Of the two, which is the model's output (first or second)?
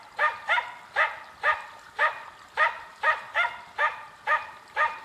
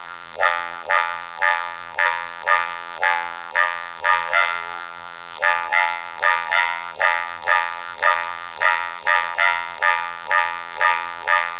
second